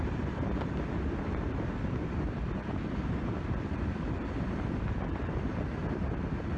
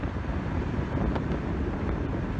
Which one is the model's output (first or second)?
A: first